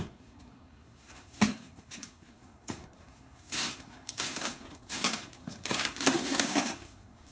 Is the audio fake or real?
fake